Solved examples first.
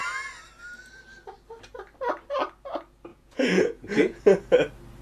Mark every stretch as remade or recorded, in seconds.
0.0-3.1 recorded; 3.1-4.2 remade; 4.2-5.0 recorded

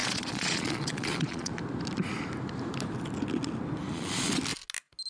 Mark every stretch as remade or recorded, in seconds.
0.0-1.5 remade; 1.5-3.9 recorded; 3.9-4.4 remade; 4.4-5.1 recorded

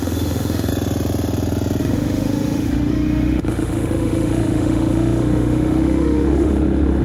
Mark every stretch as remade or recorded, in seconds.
0.0-0.7 remade; 0.7-1.8 recorded; 1.8-7.0 remade

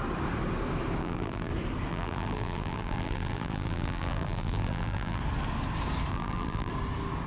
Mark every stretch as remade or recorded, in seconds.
0.0-1.0 recorded; 1.0-1.5 remade; 1.5-1.9 recorded; 1.9-5.2 remade; 5.2-6.1 recorded; 6.1-6.7 remade; 6.7-7.3 recorded